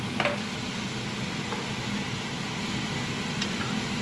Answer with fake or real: real